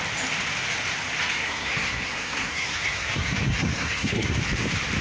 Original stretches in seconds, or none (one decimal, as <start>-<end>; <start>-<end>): 0.0-1.4; 4.4-5.0